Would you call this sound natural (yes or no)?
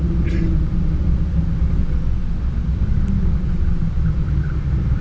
yes